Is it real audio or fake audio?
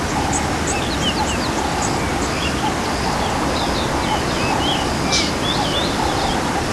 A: real